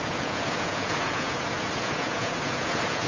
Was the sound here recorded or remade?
remade